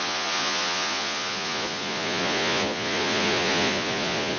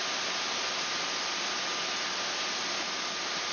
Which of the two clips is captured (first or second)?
second